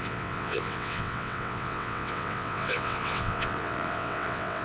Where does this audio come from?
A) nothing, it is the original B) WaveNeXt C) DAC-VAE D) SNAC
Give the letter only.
B